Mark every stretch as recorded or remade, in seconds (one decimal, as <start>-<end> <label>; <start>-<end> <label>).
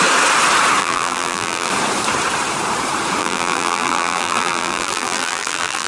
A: 0.0-0.8 recorded; 0.8-1.7 remade; 1.7-3.2 recorded; 3.2-5.9 remade